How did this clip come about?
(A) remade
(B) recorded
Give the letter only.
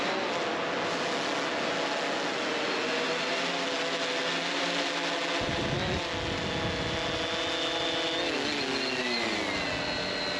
B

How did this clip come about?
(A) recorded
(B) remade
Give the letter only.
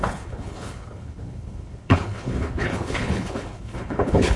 B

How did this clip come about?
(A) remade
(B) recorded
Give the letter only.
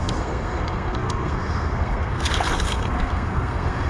A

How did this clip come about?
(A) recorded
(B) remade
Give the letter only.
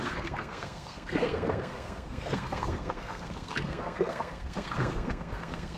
B